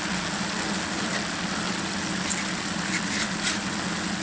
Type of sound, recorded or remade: recorded